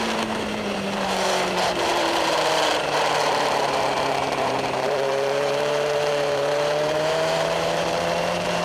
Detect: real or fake fake